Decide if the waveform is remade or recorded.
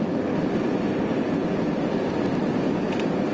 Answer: recorded